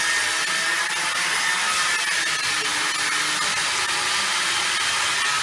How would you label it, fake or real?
real